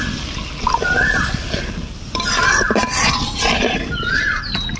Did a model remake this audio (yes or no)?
no